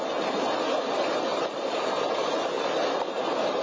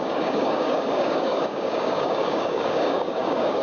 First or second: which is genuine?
first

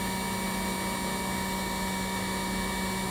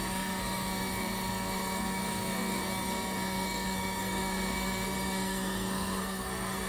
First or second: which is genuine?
first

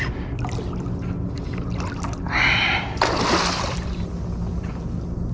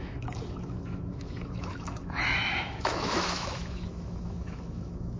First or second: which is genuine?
first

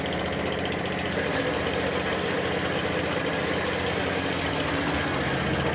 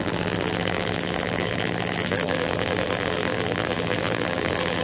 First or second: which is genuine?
first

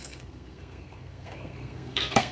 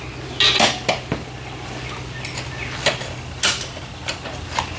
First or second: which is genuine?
second